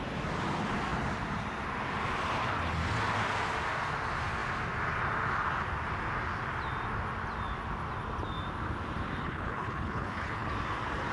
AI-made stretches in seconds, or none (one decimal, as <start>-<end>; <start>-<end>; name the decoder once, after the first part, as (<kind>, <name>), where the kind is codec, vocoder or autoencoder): 9.2-10.5 (codec, HILCodec)